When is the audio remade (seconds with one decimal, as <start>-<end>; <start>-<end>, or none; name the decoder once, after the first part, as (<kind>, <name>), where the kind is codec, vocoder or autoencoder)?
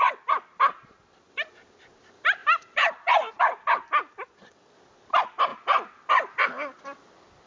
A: 2.4-3.3 (vocoder, BigVGAN v2)